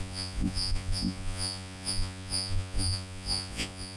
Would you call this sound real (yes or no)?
no